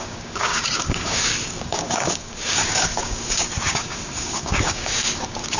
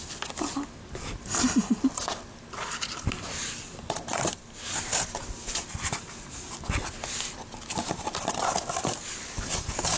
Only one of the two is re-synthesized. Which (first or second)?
first